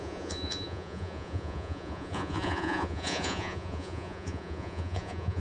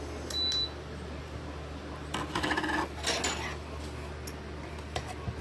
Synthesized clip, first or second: first